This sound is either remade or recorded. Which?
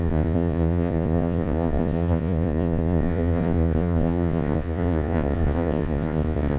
remade